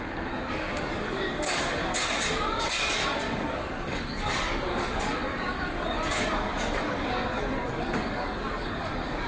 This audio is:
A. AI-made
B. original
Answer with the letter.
A